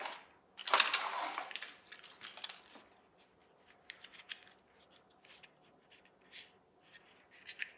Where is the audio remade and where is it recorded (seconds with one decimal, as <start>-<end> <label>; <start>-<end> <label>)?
0.0-7.8 recorded